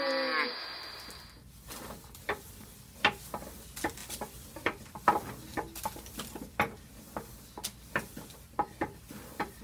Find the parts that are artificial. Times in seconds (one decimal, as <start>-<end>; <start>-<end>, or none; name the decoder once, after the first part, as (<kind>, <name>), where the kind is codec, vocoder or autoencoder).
none